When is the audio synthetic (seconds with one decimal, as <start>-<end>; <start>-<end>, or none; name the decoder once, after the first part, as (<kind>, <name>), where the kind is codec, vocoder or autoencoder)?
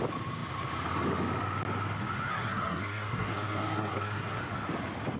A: 2.3-4.4 (codec, SNAC)